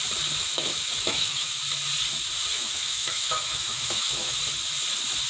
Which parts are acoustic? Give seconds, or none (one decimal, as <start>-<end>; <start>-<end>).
0.0-0.4; 1.6-2.5; 4.4-5.3